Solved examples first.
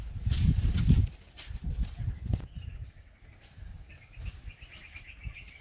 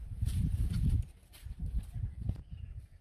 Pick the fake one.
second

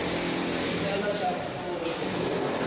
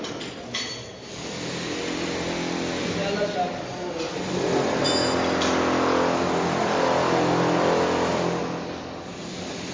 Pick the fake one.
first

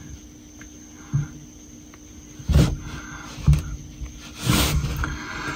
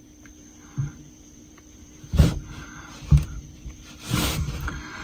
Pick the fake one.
second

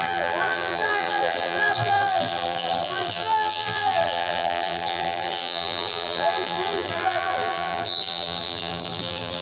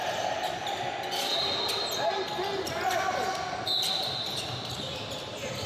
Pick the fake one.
first